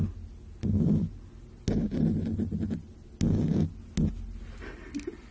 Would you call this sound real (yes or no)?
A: yes